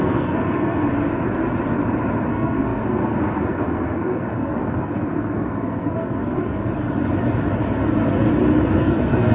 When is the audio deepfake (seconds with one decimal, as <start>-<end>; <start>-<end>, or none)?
0.0-0.9; 2.3-6.6; 8.8-9.3